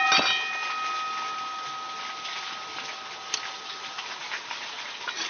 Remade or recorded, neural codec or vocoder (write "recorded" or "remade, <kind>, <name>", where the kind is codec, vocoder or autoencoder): recorded